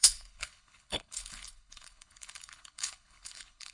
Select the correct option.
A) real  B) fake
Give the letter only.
B